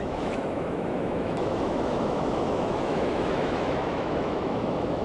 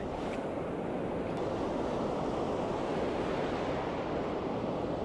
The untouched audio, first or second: second